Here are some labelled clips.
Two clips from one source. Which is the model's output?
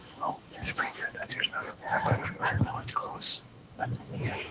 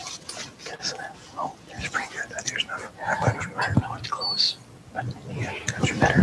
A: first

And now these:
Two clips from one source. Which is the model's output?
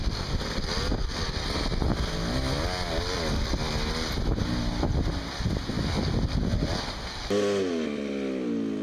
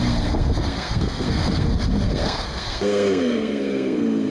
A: second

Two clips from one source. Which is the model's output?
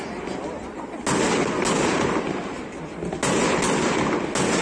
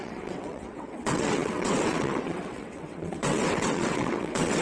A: second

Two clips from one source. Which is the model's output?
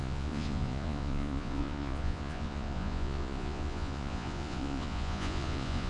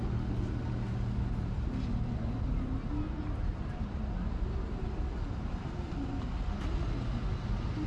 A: first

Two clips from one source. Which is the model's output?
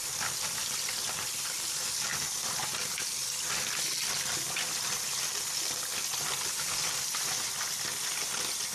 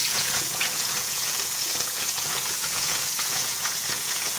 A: second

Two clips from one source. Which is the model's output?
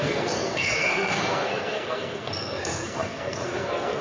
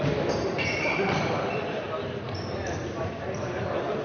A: first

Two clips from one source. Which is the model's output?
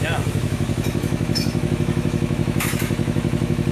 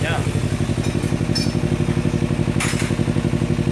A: first